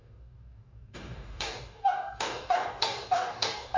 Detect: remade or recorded remade